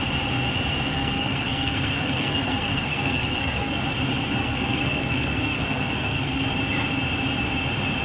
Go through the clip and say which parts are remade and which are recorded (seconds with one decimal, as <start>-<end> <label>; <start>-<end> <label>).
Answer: 0.0-0.9 recorded; 0.9-3.8 remade; 3.8-4.4 recorded; 4.4-6.4 remade; 6.4-8.0 recorded